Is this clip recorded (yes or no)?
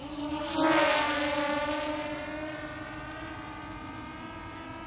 yes